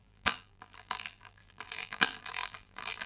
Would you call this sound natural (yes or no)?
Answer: no